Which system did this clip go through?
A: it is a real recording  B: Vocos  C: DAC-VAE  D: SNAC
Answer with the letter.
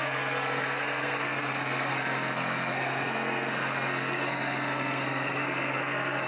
D